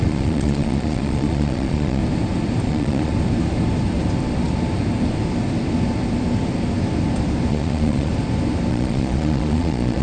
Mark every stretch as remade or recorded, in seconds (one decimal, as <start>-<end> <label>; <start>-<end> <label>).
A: 0.0-2.0 remade; 2.0-2.7 recorded; 2.7-3.1 remade; 3.1-7.5 recorded; 7.5-8.1 remade; 8.1-8.7 recorded; 8.7-10.0 remade